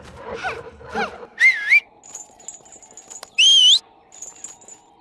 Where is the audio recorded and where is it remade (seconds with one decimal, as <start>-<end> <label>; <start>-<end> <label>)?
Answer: 0.0-5.0 recorded